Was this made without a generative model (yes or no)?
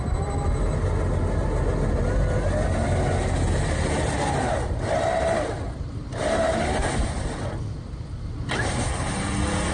yes